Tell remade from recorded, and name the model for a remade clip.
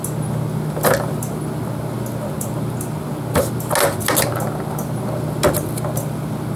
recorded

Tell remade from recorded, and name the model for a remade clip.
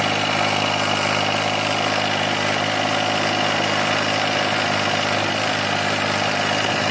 recorded